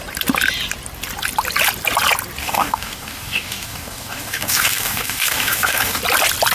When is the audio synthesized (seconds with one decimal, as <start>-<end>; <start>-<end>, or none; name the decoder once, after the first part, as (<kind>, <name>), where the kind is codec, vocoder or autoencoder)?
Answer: 2.4-6.0 (codec, DAC)